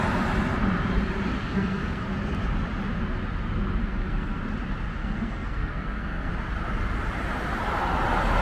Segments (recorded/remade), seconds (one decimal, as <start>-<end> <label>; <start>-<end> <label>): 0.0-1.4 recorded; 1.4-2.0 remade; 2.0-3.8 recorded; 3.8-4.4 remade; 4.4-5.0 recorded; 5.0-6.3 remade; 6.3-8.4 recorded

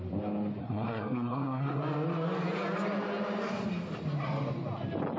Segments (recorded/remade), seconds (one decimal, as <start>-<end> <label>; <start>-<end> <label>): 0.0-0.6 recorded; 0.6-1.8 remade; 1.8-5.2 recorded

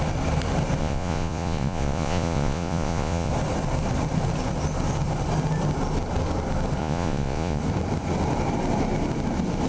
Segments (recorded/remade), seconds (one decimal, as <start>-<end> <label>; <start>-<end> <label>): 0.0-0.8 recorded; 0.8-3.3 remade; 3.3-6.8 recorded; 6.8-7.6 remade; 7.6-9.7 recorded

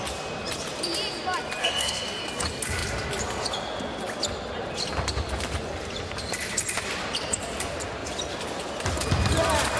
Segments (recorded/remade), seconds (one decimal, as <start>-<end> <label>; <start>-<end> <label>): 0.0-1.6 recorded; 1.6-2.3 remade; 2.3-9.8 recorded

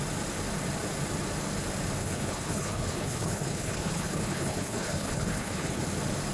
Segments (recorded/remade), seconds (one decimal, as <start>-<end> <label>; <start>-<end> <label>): 0.0-2.0 recorded; 2.0-5.8 remade; 5.8-6.3 recorded